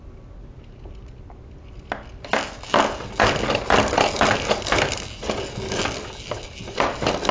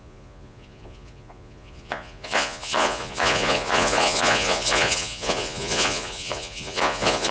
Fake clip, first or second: second